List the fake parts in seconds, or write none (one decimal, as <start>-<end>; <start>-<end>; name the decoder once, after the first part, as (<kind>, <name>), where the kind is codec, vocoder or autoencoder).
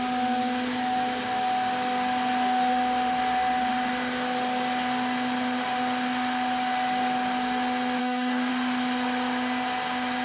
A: 8.0-8.5 (codec, DAC)